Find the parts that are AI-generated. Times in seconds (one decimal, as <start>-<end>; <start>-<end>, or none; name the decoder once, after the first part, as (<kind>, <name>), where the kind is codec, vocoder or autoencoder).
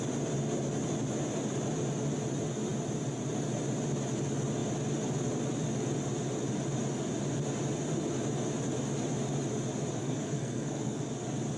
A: 10.0-11.1 (codec, SNAC)